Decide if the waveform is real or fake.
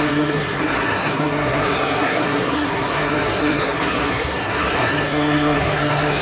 fake